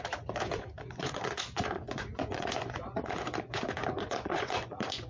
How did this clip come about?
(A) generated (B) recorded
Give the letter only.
A